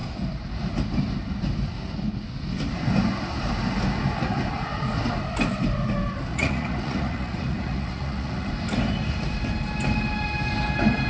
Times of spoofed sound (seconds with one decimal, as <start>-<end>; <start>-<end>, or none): 6.3-8.5